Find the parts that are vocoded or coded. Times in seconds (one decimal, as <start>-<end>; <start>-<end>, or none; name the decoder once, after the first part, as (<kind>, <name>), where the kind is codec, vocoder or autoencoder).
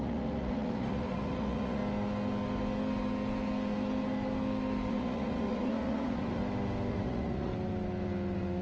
0.0-1.8 (vocoder, Vocos); 4.9-6.4; 6.9-7.5